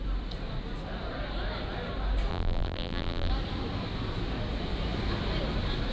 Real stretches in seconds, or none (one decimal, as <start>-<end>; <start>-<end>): 0.0-2.3; 3.3-5.9